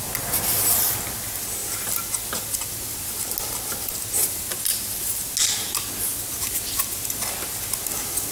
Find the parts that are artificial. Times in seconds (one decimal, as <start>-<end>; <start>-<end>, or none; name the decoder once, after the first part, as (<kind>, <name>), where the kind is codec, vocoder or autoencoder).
none